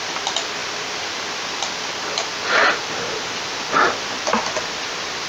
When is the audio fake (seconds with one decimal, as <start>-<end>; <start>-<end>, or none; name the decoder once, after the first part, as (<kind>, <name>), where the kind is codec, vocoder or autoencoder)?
0.6-1.2 (vocoder, BigVGAN v2)